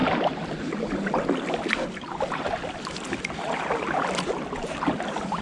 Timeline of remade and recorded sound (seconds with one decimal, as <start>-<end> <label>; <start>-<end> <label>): 0.0-5.4 recorded